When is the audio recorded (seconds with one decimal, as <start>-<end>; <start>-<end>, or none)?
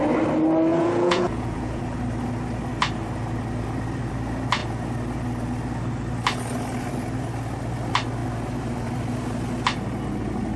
0.0-0.7; 1.8-10.6